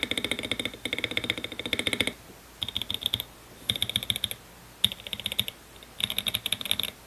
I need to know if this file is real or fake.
real